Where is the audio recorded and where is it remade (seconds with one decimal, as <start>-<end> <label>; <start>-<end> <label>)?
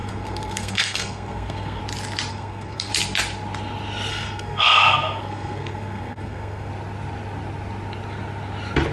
0.0-1.8 remade; 1.8-2.3 recorded; 2.3-2.9 remade; 2.9-4.1 recorded; 4.1-6.7 remade; 6.7-8.9 recorded